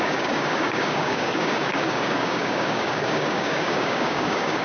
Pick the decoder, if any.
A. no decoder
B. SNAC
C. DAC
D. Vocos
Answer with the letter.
C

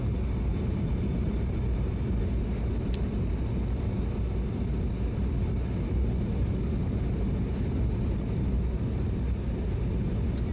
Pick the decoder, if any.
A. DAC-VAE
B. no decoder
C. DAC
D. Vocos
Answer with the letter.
B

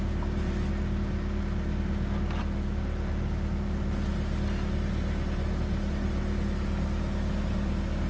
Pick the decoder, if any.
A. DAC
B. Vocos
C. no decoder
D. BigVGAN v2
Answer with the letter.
C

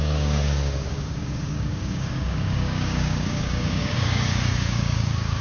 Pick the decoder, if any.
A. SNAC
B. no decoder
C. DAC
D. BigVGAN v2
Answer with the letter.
C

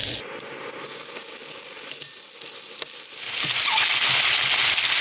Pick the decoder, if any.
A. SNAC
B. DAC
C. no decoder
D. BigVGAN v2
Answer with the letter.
C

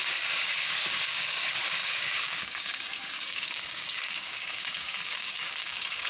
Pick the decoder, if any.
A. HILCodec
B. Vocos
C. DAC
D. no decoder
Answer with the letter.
C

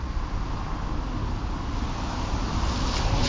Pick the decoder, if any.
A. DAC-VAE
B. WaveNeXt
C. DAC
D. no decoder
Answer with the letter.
D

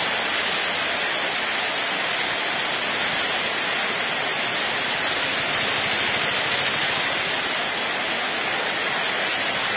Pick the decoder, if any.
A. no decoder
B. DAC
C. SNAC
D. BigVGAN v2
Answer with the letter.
A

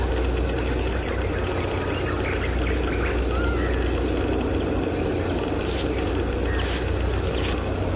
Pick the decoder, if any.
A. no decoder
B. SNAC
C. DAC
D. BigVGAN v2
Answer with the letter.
A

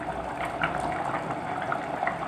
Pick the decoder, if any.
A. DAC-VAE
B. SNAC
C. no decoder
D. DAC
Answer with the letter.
C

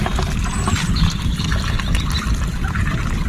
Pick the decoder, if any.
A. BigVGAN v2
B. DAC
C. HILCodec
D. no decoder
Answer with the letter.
D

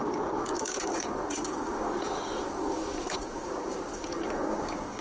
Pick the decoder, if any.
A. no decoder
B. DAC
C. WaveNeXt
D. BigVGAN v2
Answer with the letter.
B